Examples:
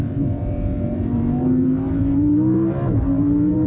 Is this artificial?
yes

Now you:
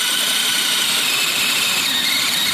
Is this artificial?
no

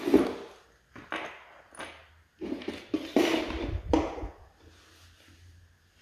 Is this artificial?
no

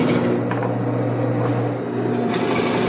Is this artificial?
no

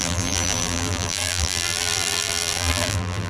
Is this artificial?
yes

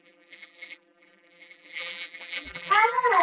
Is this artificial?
yes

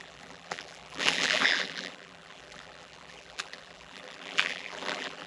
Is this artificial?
yes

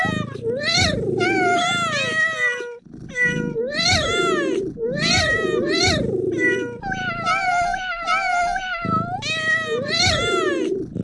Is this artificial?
no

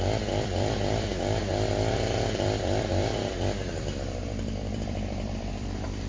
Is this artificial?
yes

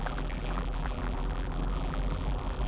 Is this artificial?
yes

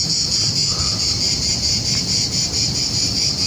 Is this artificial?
no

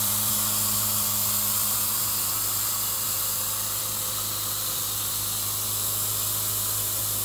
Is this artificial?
yes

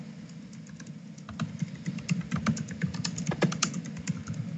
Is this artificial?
no